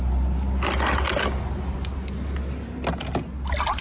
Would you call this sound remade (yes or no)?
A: no